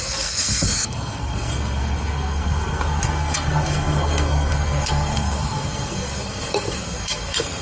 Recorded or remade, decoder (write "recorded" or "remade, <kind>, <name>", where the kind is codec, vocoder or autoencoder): remade, codec, SNAC